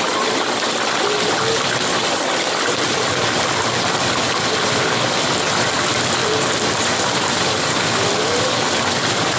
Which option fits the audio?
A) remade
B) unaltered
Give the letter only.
A